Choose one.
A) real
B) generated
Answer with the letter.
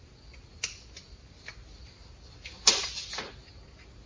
A